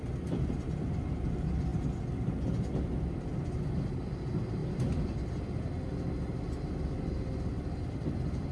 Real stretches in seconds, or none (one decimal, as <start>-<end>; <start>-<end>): 0.0-8.5